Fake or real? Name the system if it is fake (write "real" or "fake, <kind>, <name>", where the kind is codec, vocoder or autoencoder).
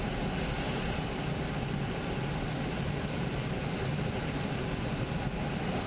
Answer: real